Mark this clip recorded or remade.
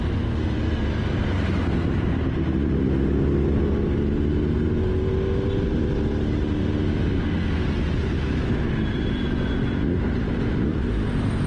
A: recorded